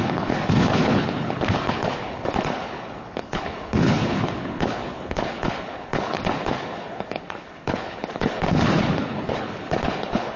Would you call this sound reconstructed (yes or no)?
yes